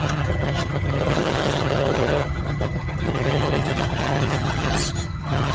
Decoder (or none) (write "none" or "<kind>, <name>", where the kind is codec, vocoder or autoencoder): vocoder, HiFi-GAN